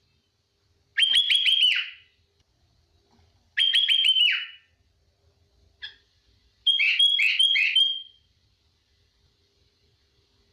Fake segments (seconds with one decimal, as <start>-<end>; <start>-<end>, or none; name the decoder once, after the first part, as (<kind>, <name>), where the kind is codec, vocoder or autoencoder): none